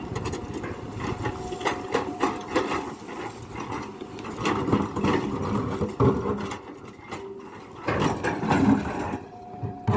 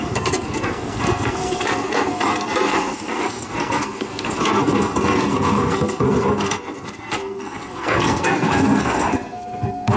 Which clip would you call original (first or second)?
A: first